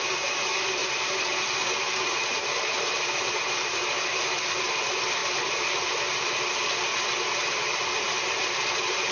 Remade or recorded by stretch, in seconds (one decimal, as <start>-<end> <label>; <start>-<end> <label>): 0.0-9.1 recorded